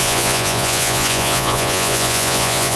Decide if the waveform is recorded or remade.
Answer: remade